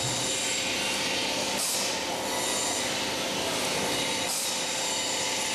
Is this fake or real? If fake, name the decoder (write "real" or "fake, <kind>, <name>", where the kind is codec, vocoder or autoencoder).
real